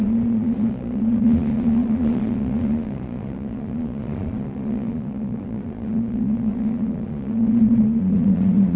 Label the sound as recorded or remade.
remade